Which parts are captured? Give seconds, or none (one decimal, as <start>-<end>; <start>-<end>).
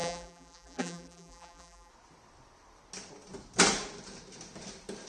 1.9-5.1